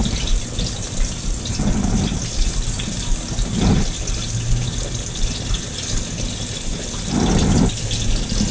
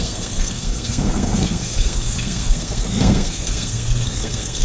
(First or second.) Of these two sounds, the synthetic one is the second